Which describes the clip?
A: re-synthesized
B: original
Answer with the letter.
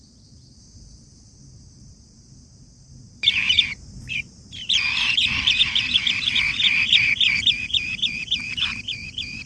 A